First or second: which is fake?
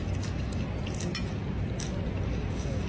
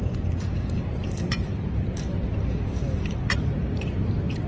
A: second